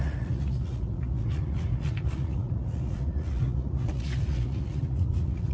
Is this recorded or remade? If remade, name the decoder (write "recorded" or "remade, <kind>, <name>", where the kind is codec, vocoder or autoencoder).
remade, vocoder, Vocos